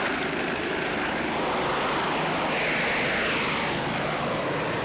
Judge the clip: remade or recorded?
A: recorded